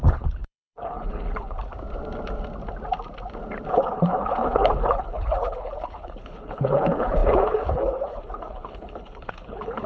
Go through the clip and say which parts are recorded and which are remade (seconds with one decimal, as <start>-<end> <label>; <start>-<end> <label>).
0.0-1.7 remade; 1.7-3.7 recorded; 3.7-9.9 remade